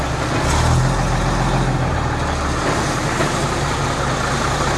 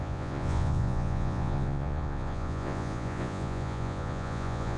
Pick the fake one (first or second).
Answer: second